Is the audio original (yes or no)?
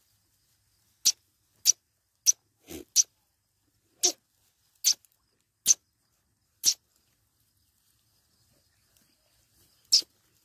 yes